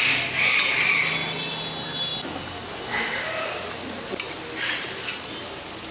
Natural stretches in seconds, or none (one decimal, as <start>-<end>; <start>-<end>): 0.0-5.9